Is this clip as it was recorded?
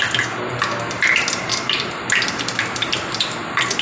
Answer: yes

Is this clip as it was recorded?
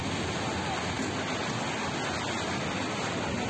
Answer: yes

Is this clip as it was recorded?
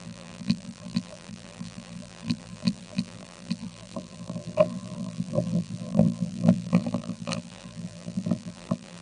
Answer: no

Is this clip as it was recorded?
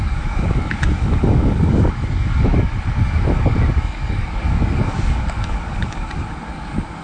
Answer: no